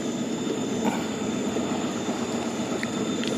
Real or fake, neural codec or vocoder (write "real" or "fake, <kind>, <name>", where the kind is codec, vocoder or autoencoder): real